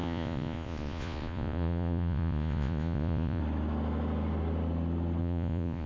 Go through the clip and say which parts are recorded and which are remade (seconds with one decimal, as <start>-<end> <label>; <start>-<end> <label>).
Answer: 0.0-3.4 remade; 3.4-5.2 recorded; 5.2-5.9 remade